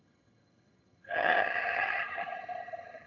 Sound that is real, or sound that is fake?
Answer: fake